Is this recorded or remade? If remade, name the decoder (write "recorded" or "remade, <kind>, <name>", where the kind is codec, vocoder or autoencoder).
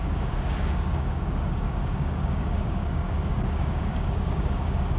remade, codec, DAC